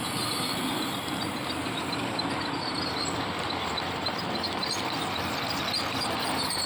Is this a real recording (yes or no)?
no